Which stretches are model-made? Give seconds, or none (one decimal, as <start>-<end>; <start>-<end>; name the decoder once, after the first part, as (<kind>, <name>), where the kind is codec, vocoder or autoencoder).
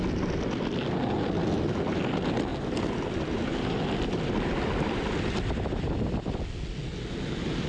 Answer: 2.5-6.4 (vocoder, BigVGAN v2)